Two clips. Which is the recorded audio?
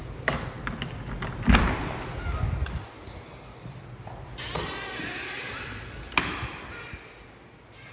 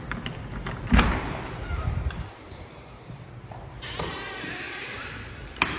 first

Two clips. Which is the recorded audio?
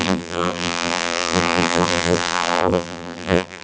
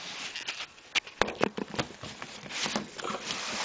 second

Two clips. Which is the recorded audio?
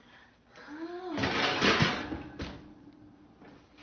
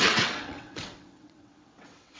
first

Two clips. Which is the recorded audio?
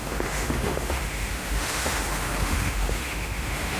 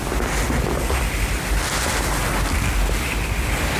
second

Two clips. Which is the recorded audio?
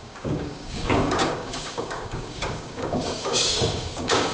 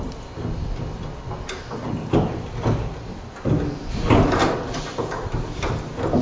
second